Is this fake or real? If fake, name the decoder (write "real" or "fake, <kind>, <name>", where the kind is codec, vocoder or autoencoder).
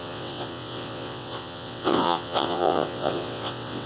fake, vocoder, WaveNeXt